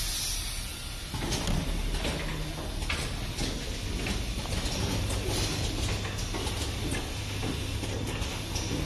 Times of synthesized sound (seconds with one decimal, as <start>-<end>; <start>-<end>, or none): none